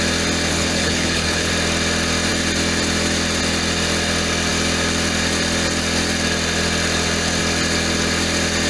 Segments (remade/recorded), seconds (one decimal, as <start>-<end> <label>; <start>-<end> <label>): 0.0-0.5 recorded; 0.5-1.5 remade; 1.5-8.7 recorded